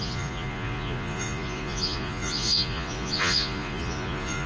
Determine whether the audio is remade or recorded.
remade